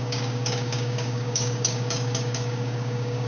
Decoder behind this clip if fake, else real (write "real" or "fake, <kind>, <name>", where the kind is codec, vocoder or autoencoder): fake, codec, DAC